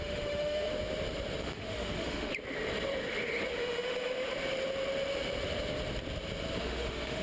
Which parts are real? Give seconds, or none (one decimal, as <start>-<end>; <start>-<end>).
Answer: 0.7-1.4; 2.3-3.6; 4.3-6.6